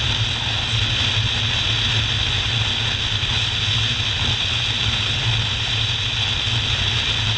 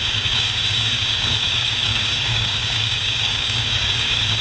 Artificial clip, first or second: second